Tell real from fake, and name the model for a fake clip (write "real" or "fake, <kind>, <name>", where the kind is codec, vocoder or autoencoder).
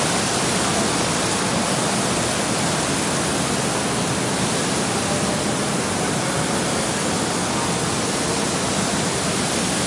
real